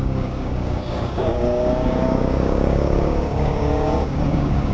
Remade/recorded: remade